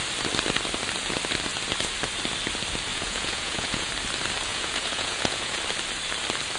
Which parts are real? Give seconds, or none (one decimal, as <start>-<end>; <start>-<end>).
0.0-2.9; 3.9-4.5; 5.6-6.6